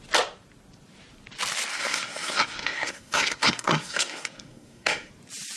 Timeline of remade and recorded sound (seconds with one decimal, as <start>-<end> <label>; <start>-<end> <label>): 0.0-1.7 recorded; 1.7-5.1 remade; 5.1-5.6 recorded